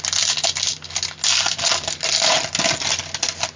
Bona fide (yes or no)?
yes